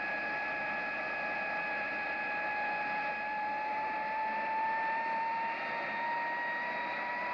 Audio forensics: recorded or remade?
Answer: recorded